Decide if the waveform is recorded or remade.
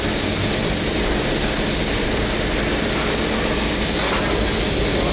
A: recorded